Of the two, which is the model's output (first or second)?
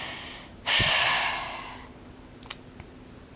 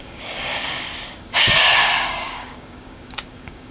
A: second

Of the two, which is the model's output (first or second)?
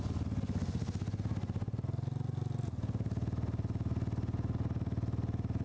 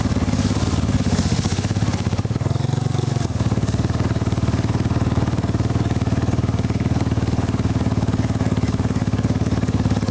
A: second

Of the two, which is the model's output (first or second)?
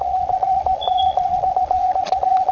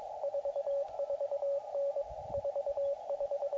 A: first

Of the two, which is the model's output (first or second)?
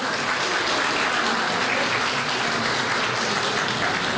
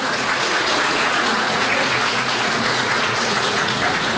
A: second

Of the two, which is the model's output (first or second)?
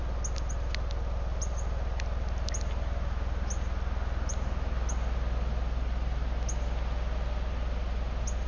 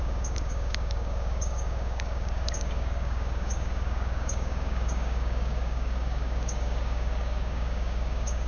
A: second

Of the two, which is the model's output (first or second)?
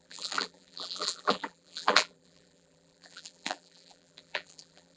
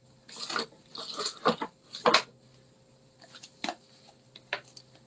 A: first